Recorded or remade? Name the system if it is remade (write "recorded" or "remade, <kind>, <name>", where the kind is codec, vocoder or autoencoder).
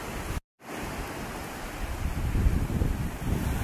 recorded